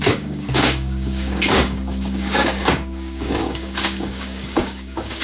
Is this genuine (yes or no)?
no